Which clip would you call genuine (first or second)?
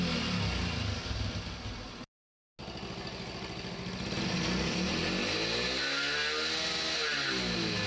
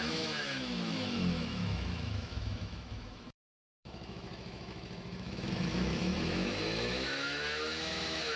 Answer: first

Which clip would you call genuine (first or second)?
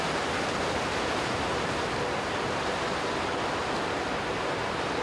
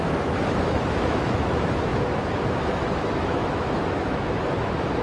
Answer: first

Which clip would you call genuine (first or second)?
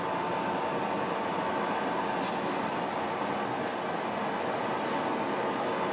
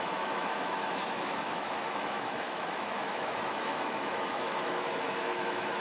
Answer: first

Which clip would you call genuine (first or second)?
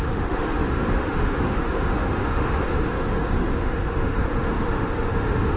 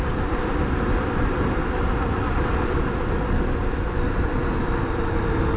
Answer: second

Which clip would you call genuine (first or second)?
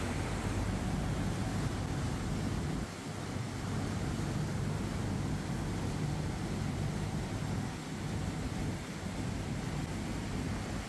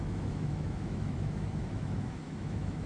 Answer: first